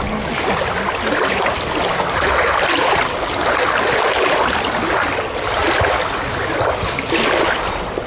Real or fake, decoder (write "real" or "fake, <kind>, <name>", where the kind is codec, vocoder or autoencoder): real